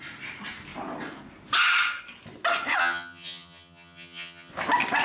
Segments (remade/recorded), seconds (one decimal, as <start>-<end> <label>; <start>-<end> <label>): 0.0-2.8 recorded; 2.8-4.5 remade; 4.5-5.0 recorded